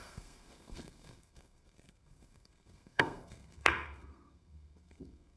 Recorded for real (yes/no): no